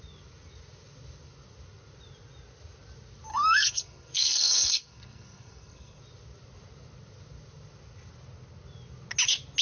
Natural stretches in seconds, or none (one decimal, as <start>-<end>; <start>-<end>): 0.0-3.3; 6.0-9.6